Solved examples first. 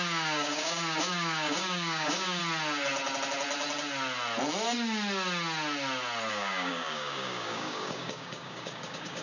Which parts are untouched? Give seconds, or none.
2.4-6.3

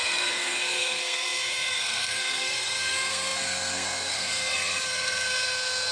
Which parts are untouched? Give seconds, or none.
none

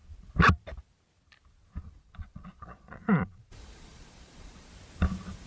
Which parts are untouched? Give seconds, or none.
0.0-1.8; 4.7-5.5

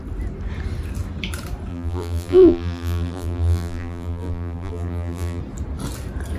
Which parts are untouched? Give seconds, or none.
0.0-1.7; 5.4-6.4

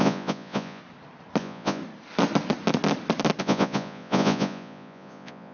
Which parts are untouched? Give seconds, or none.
0.8-1.4; 1.8-3.4

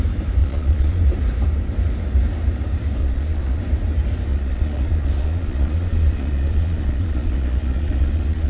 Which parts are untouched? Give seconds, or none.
0.0-0.4; 1.0-3.0; 3.6-4.3